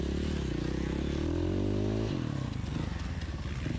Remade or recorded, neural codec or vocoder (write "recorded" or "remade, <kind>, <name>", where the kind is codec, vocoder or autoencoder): recorded